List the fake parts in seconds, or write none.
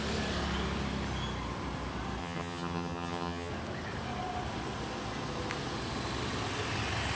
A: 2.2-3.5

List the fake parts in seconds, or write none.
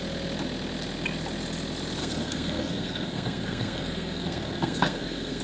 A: 2.0-5.4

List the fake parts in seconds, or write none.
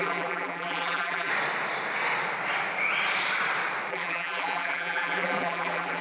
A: 0.0-1.3; 3.9-6.0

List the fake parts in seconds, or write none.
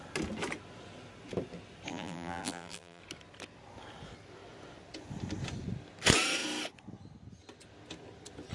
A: 1.9-3.0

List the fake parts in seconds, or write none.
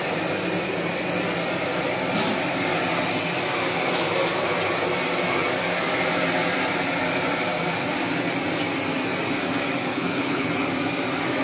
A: 9.9-10.5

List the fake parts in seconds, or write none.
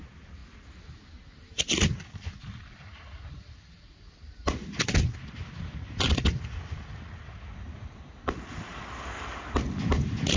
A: none